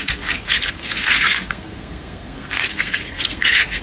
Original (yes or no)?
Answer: no